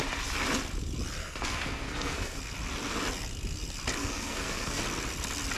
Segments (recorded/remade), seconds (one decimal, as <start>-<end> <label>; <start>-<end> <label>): 0.0-1.2 recorded; 1.2-2.4 remade; 2.4-4.0 recorded; 4.0-4.8 remade; 4.8-5.6 recorded